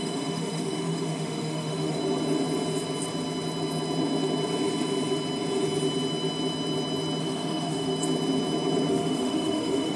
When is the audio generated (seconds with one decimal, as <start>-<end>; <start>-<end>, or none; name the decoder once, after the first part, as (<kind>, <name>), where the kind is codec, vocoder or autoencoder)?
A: 0.0-2.0 (autoencoder, DAC-VAE); 7.2-7.9; 8.9-10.0